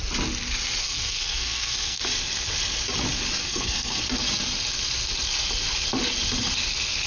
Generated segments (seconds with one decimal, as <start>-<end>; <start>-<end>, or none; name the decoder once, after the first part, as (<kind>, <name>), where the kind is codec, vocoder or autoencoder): 0.8-2.0 (codec, SNAC); 3.4-4.0